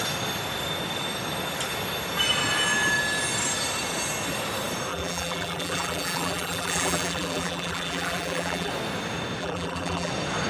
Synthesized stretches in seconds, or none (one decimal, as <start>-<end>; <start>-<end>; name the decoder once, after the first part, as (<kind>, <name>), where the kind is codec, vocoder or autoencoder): 4.9-8.7 (vocoder, BigVGAN v2); 9.4-10.1